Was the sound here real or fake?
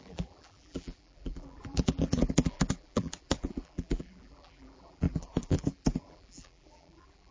fake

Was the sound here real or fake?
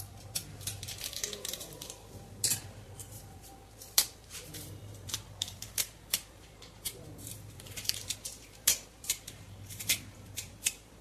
fake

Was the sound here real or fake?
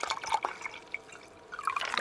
real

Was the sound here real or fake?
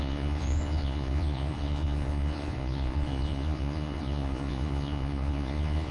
fake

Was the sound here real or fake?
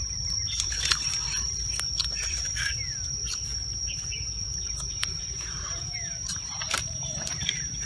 fake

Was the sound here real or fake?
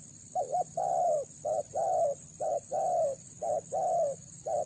fake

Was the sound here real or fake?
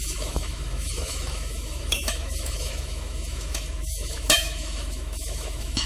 fake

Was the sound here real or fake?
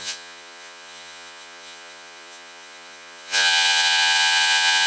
fake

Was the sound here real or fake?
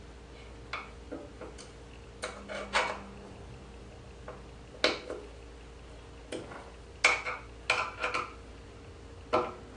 real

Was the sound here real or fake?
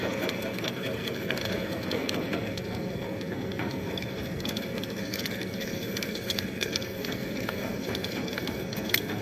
fake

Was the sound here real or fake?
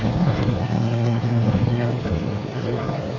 fake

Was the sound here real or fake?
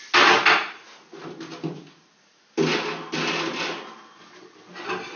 real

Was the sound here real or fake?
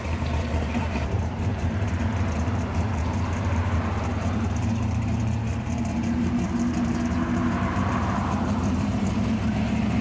fake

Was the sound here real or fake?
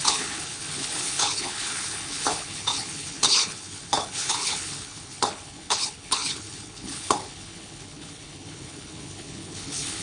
fake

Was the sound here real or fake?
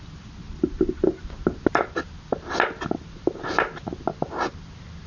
real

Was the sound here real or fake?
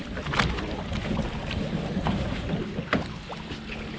real